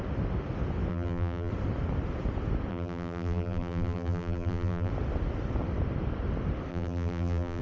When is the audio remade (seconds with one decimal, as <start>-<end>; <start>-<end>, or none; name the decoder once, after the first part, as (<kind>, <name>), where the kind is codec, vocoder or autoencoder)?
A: 0.9-1.5 (vocoder, BigVGAN v2); 2.7-4.9; 6.7-7.6

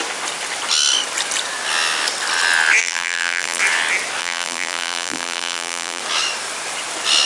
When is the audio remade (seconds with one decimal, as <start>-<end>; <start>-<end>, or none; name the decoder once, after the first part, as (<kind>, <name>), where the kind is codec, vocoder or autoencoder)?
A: 2.8-3.6 (vocoder, BigVGAN v2); 4.2-6.0

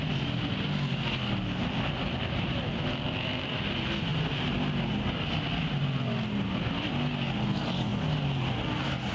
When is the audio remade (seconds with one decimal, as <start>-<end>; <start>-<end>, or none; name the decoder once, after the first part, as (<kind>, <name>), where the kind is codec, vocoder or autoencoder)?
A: none

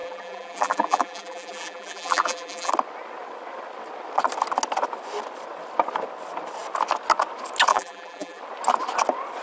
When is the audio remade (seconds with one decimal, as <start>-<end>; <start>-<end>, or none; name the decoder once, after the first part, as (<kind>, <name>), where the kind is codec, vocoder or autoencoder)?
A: 0.0-2.7 (vocoder, BigVGAN v2); 7.7-8.4

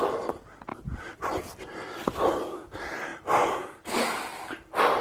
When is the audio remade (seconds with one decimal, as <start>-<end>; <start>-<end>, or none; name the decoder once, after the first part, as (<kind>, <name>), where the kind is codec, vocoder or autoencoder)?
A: 0.7-1.3 (vocoder, BigVGAN v2)

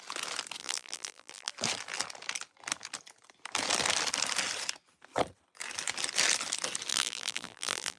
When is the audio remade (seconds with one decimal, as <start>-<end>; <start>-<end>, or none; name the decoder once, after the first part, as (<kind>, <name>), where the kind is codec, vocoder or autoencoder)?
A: 0.6-1.5 (vocoder, BigVGAN v2); 6.9-8.0